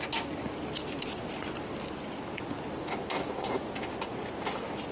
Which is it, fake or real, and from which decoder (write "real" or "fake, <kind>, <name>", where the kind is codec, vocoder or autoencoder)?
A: real